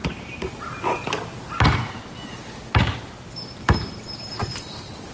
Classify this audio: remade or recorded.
recorded